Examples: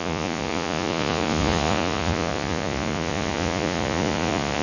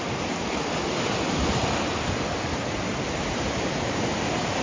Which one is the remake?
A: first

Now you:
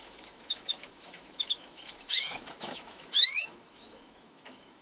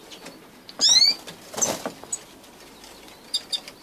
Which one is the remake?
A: first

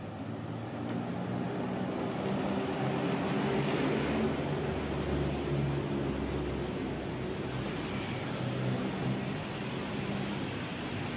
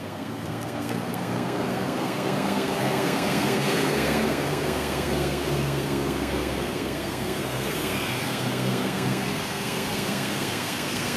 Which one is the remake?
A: second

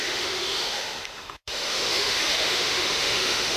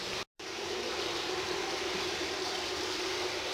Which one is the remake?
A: first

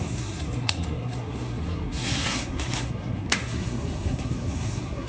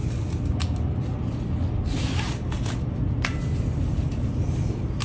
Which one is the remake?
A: first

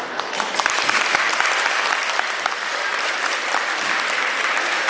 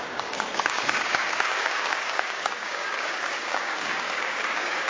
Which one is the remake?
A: second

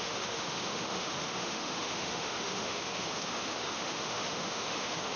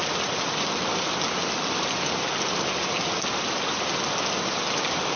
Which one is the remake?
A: first